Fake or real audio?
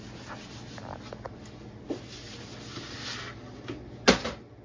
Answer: real